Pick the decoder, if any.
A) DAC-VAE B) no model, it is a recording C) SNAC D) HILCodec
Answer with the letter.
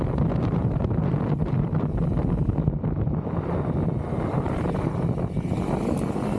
B